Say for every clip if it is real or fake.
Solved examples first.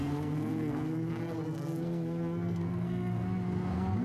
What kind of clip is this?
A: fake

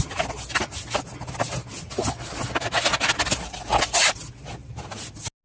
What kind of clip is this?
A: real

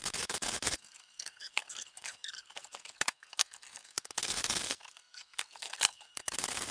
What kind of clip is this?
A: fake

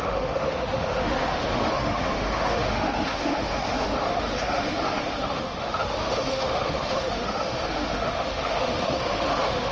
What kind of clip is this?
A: fake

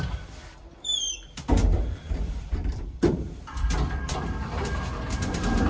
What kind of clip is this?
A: fake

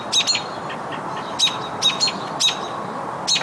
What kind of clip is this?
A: real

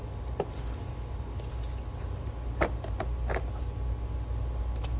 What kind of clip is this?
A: real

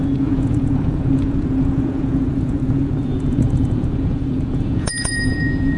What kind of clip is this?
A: fake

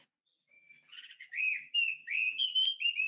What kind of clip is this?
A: real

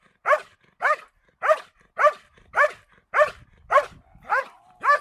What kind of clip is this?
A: real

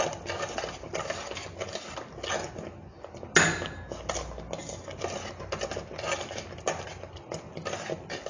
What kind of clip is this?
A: real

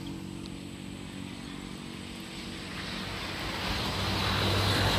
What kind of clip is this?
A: real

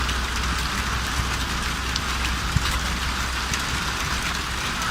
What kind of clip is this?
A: real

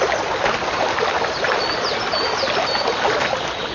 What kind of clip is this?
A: real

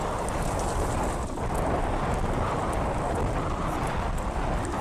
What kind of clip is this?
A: real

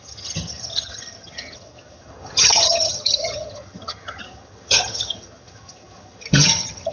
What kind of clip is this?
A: fake